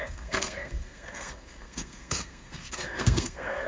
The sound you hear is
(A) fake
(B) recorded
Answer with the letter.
A